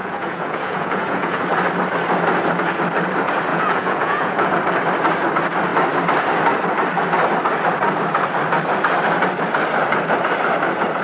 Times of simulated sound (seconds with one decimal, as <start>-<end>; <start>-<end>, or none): 0.0-1.4; 3.5-4.5